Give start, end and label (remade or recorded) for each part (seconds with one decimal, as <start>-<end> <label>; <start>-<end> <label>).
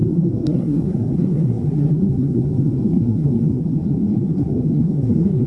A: 0.0-5.5 remade